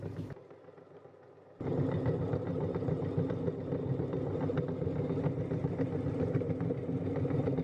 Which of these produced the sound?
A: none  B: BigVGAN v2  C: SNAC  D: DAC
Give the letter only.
A